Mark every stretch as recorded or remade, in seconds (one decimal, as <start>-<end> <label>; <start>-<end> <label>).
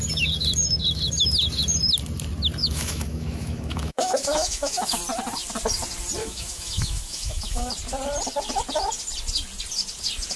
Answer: 0.0-2.6 recorded; 2.6-5.0 remade; 5.0-6.2 recorded; 6.2-7.7 remade; 7.7-10.4 recorded